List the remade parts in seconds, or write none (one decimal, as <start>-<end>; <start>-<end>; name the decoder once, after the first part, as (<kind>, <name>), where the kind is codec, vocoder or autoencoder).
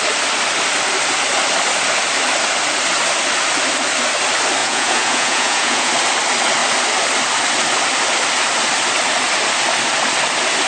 4.6-5.9 (vocoder, Vocos)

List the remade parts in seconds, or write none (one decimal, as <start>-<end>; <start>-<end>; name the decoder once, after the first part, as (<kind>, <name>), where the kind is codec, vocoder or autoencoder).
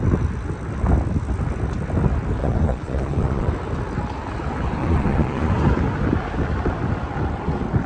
2.4-3.5 (vocoder, Vocos); 4.8-5.5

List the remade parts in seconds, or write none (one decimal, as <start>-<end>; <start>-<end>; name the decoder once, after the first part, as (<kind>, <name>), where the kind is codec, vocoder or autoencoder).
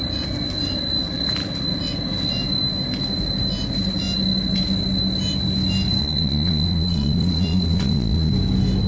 6.0-8.3 (vocoder, Vocos)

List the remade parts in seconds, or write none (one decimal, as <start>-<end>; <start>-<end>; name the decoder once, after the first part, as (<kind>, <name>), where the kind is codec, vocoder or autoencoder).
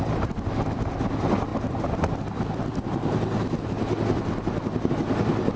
none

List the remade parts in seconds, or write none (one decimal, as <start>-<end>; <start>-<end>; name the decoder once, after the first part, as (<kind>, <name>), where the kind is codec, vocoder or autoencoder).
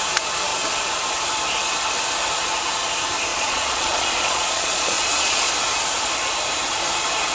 3.3-5.5 (vocoder, Vocos)